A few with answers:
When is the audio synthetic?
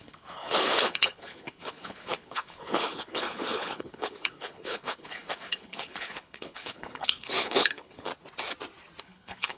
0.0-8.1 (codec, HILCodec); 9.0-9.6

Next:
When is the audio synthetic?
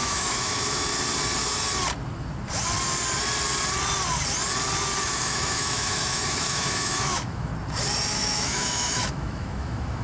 0.0-0.9 (autoencoder, DAC-VAE); 5.0-7.5; 8.1-10.0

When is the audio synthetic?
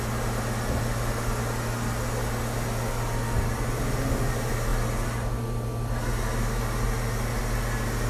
none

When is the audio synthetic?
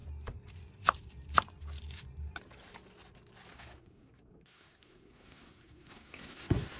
3.5-6.8 (codec, SNAC)